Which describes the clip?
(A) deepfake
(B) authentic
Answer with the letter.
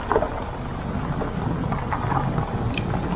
B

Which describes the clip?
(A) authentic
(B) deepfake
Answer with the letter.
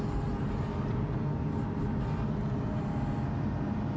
A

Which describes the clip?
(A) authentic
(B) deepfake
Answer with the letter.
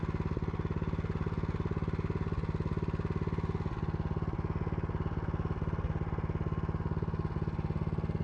A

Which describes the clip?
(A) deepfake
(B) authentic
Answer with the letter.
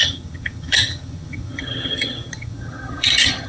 A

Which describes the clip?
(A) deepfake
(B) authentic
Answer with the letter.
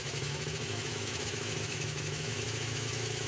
A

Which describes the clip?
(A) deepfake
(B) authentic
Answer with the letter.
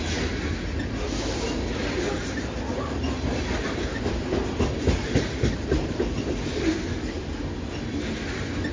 B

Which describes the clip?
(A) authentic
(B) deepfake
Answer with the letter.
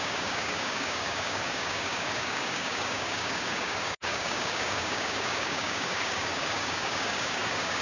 B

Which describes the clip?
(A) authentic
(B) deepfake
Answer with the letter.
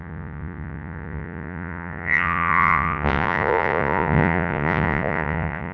B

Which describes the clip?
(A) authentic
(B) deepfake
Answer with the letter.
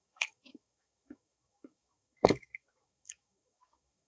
B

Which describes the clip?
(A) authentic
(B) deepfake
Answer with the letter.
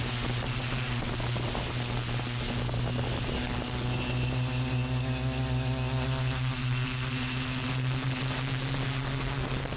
A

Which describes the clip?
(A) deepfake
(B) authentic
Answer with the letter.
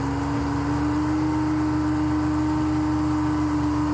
B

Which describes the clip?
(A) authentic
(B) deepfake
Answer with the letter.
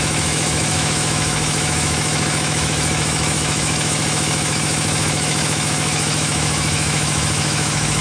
B